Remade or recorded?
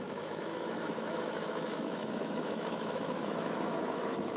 remade